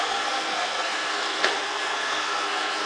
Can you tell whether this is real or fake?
fake